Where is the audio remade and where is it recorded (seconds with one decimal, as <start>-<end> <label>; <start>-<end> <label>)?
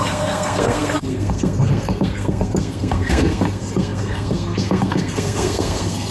0.0-6.1 remade